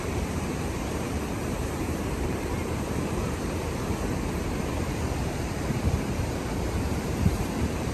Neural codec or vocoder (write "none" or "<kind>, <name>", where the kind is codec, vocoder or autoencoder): vocoder, BigVGAN v2